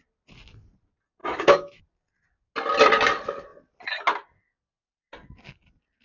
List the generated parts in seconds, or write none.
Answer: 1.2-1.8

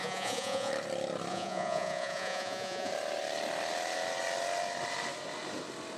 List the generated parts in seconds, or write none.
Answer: 0.0-0.7; 1.3-2.9